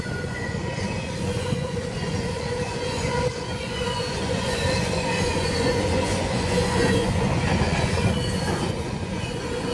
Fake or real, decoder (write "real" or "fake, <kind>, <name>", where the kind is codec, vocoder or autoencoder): fake, vocoder, Vocos